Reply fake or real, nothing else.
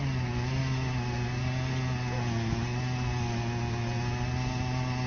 real